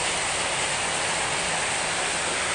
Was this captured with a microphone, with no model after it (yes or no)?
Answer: yes